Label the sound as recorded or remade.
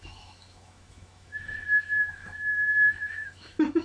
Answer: remade